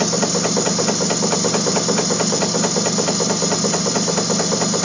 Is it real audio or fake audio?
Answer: real